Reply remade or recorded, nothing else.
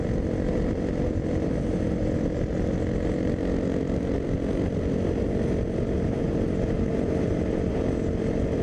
recorded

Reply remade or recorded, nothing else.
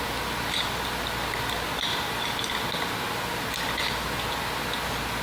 recorded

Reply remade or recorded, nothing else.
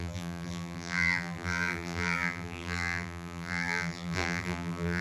remade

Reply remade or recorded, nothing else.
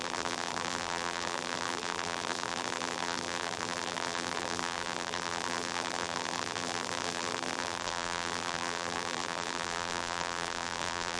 remade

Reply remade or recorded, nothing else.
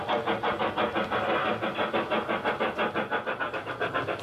recorded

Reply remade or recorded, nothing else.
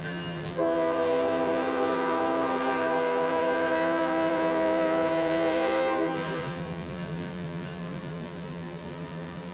remade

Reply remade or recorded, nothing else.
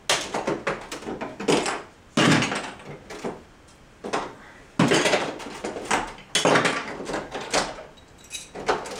recorded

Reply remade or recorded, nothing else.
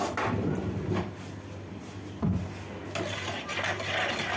recorded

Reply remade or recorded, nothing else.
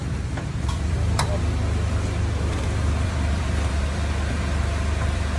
remade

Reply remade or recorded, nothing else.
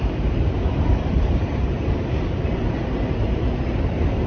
remade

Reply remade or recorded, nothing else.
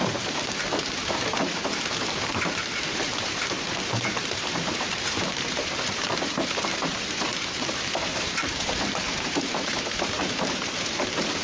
remade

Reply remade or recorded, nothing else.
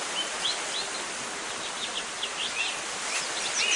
recorded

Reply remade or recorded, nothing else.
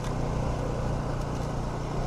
recorded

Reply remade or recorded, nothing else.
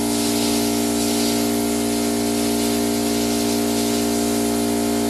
recorded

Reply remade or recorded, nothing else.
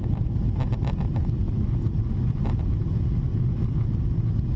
recorded